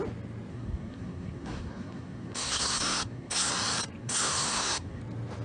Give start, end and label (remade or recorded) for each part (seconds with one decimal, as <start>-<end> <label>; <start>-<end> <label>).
0.0-0.5 recorded; 0.5-3.5 remade; 3.5-4.0 recorded; 4.0-5.0 remade; 5.0-5.4 recorded